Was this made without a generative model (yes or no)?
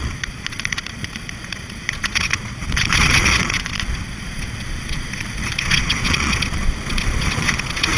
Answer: no